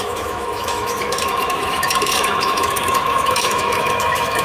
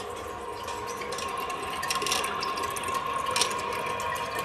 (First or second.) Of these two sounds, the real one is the second